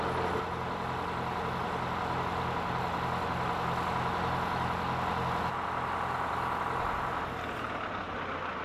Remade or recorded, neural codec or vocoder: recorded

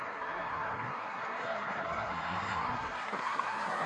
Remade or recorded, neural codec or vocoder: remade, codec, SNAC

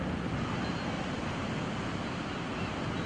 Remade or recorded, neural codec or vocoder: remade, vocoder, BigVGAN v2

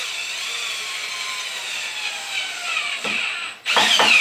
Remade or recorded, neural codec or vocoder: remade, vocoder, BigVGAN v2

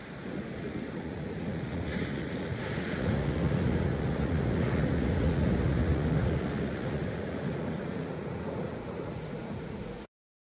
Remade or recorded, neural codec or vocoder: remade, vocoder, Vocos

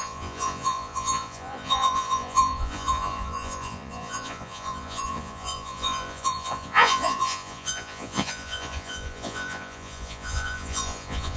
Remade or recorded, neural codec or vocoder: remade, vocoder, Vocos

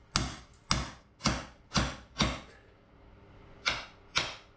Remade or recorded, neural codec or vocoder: recorded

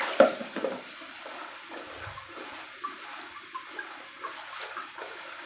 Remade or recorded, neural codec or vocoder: recorded